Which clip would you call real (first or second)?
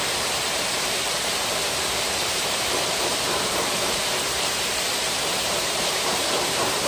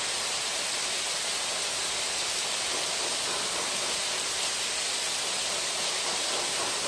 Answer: second